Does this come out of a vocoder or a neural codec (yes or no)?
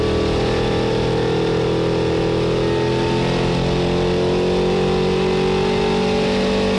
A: no